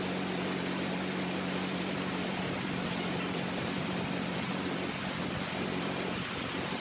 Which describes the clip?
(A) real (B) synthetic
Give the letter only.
B